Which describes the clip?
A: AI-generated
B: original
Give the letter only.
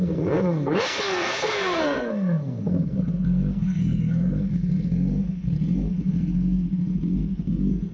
A